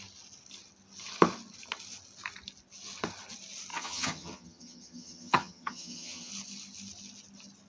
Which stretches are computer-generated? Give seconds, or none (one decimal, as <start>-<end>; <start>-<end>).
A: 3.7-6.3

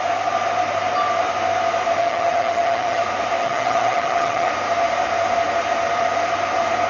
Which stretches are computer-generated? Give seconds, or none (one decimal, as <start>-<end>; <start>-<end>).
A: 2.0-3.0; 3.4-4.5

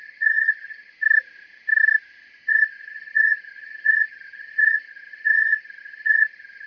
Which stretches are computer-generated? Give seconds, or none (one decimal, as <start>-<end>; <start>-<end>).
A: 0.0-0.9; 2.5-6.7

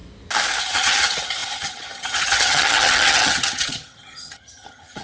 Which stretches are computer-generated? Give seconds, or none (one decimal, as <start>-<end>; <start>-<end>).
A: 0.6-5.0